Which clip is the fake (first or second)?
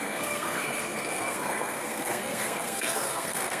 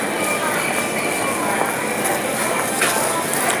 first